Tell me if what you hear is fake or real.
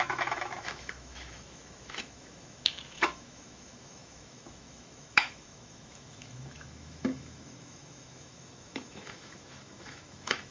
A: fake